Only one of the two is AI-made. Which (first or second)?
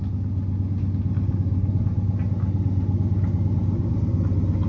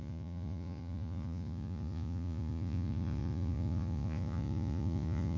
second